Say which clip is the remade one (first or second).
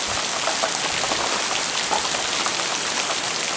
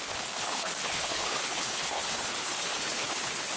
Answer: second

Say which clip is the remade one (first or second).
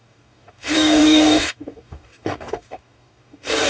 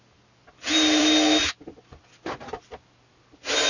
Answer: first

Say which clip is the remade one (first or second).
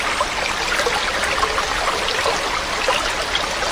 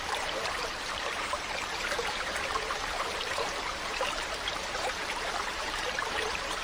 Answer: second